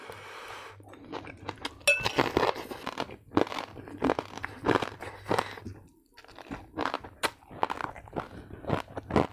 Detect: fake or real real